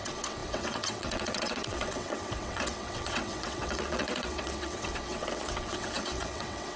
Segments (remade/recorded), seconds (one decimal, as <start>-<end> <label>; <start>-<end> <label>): 0.0-6.8 remade